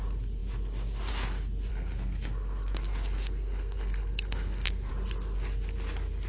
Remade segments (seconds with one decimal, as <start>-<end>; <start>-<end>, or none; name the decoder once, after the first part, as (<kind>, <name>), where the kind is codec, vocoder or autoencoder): 1.7-4.9 (codec, SNAC)